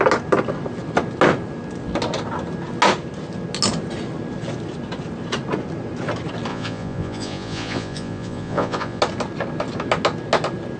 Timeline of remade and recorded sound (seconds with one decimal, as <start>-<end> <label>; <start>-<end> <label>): 0.0-6.5 recorded; 6.5-9.0 remade; 9.0-10.8 recorded

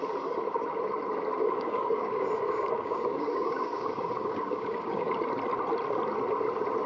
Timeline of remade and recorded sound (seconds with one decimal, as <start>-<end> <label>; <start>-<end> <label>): 0.0-1.4 recorded; 1.4-5.1 remade; 5.1-6.9 recorded

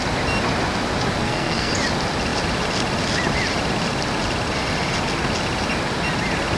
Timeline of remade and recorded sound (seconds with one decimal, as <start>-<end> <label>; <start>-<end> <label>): 0.0-1.2 recorded; 1.2-1.7 remade; 1.7-6.6 recorded

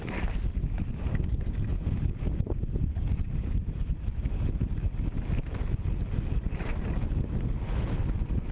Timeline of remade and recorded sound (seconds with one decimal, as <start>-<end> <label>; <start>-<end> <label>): 0.0-1.7 recorded; 1.7-3.8 remade; 3.8-8.5 recorded

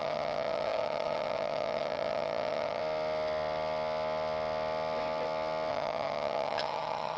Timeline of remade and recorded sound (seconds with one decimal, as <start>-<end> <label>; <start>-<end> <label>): 0.0-2.8 remade; 2.8-5.7 recorded; 5.7-7.2 remade

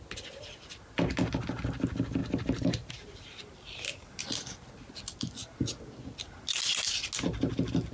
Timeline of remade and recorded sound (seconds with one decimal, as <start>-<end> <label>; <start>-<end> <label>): 0.0-2.2 recorded; 2.2-2.9 remade; 2.9-7.9 recorded

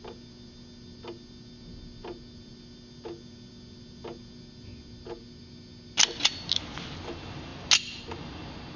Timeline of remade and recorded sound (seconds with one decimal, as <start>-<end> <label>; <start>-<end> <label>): 0.0-8.8 recorded